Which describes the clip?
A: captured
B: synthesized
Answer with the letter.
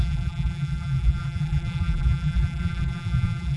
B